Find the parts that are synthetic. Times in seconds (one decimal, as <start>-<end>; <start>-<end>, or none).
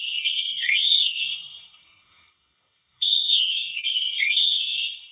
0.0-5.1